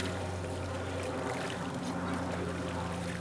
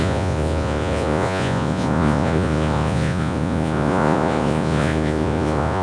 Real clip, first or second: first